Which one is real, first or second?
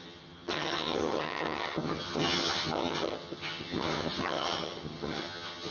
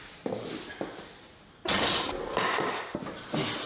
second